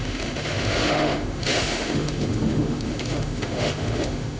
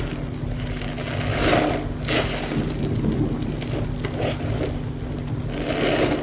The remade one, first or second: first